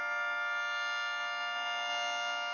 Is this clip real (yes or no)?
yes